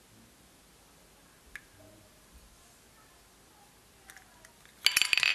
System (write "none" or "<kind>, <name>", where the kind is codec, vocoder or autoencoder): none